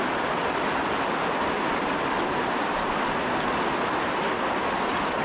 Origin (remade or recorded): recorded